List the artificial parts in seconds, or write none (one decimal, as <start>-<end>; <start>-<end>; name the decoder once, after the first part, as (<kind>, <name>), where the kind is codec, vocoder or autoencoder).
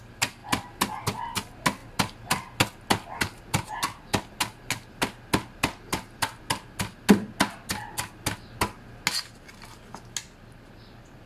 none